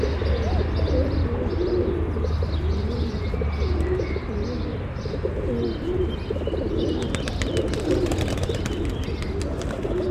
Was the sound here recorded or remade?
recorded